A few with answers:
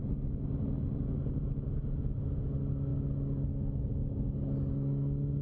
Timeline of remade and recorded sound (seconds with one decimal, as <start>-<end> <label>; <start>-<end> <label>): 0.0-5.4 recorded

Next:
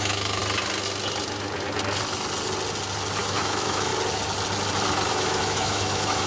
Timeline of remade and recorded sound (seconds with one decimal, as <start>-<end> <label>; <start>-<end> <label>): 0.0-0.4 remade; 0.4-3.2 recorded; 3.2-3.9 remade; 3.9-5.1 recorded; 5.1-6.3 remade

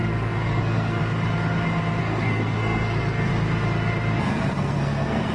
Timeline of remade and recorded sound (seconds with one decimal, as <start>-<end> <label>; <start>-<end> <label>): 0.0-1.0 remade; 1.0-2.0 recorded; 2.0-3.3 remade; 3.3-4.2 recorded; 4.2-5.3 remade